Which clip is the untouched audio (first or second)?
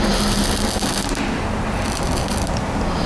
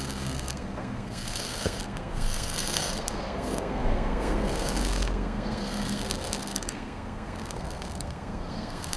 first